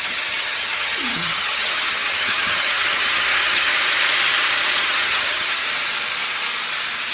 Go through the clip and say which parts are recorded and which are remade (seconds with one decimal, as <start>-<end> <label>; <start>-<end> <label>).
0.0-3.7 remade; 3.7-4.8 recorded; 4.8-5.6 remade; 5.6-7.1 recorded